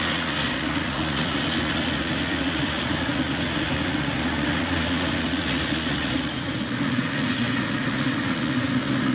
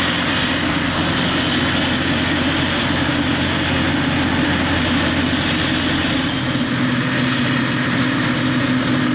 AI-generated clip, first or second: first